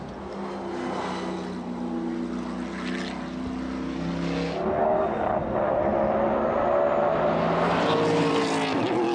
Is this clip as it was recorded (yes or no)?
yes